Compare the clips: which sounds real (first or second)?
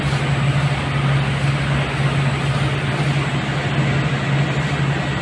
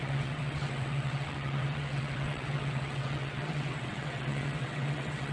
first